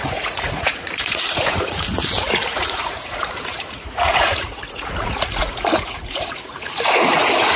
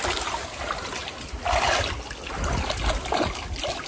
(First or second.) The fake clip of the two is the first